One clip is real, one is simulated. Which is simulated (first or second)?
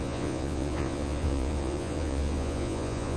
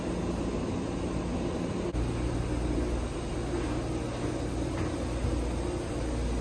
first